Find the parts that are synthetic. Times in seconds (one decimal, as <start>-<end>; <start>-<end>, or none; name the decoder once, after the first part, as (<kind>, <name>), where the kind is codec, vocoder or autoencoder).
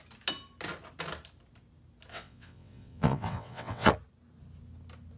2.1-3.9 (vocoder, WaveNeXt)